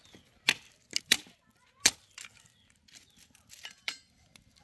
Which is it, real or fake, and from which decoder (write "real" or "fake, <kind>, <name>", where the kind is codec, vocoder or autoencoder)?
real